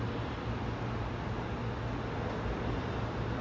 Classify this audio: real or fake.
real